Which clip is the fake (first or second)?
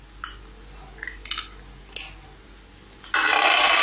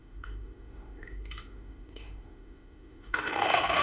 second